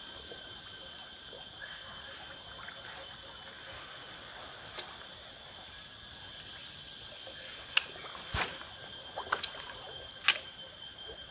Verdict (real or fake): real